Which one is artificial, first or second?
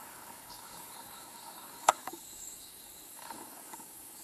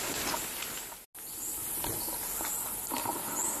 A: first